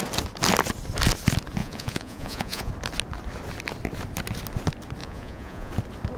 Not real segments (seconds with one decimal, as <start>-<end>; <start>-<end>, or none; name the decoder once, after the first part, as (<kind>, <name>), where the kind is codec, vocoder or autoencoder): 1.6-2.7 (vocoder, Vocos); 5.0-5.7